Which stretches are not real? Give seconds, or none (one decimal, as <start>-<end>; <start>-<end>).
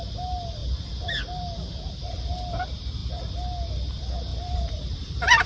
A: 4.3-5.5